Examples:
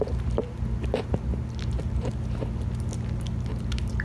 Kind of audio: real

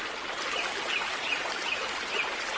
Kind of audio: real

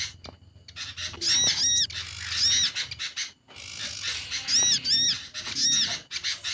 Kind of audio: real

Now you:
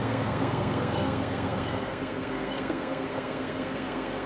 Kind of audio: fake